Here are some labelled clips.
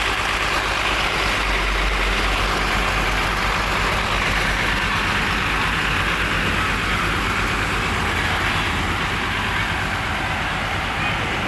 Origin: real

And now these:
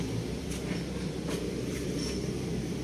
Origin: fake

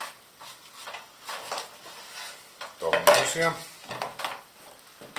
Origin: real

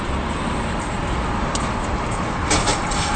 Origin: real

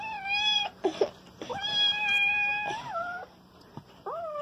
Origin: fake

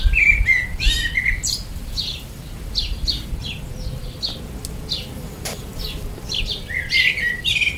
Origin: real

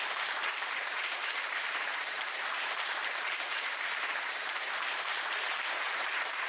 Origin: fake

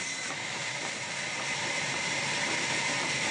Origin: fake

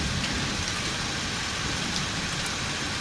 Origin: real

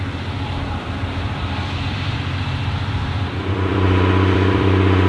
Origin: fake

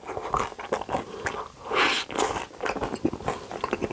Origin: real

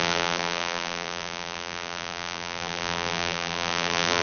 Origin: fake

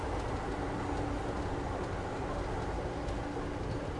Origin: real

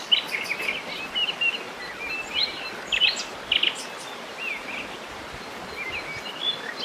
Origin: real